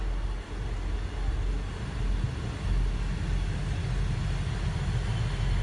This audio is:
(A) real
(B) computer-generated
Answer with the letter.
A